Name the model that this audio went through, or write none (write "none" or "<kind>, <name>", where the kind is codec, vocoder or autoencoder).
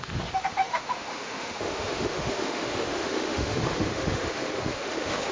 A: autoencoder, DAC-VAE